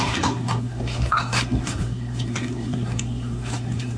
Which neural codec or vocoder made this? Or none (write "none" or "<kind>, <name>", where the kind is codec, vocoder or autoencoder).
codec, SNAC